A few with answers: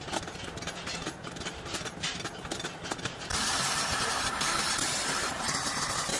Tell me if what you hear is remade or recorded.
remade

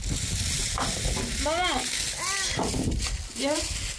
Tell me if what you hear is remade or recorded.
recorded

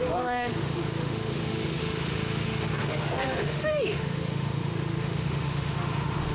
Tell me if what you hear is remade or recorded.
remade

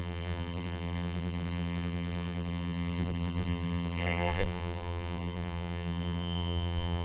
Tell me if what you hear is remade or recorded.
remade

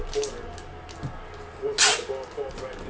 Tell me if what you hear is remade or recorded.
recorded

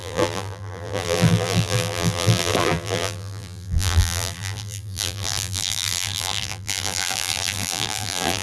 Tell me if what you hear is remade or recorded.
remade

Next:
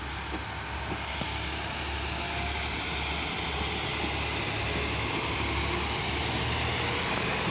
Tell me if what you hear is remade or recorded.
recorded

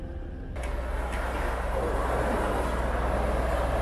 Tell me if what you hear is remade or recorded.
recorded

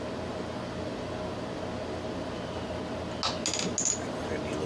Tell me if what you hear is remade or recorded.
recorded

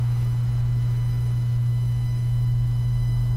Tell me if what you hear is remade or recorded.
remade